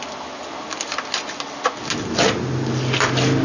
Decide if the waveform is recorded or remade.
recorded